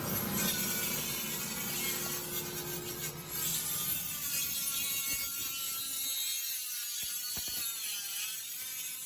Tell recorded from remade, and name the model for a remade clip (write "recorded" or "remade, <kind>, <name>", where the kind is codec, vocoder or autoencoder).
recorded